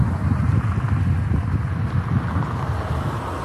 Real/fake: real